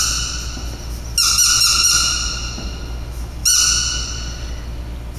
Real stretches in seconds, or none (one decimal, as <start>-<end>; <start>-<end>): 0.0-5.2